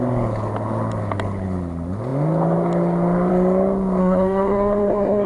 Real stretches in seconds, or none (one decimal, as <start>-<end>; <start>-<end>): 0.0-4.0